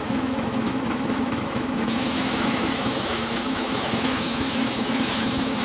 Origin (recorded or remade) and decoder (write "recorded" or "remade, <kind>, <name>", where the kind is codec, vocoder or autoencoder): remade, autoencoder, DAC-VAE